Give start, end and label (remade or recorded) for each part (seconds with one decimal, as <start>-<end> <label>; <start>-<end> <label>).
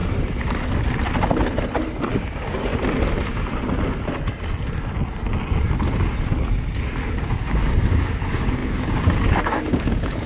0.0-2.1 recorded; 2.1-2.7 remade; 2.7-7.2 recorded; 7.2-10.3 remade